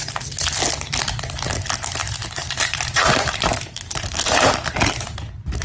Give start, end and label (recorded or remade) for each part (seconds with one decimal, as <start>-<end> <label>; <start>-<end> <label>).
0.0-2.0 recorded; 2.0-4.9 remade; 4.9-5.6 recorded